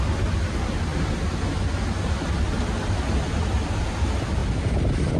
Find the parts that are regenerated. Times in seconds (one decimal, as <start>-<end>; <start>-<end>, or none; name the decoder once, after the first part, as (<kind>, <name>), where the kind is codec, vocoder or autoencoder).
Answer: none